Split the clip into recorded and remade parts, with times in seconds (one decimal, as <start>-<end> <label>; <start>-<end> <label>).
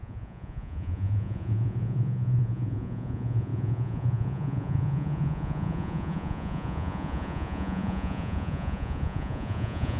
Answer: 0.0-10.0 remade